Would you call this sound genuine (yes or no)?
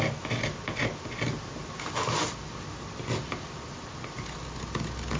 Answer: yes